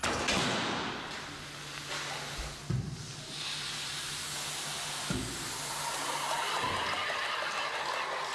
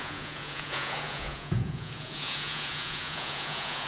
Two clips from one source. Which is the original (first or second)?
first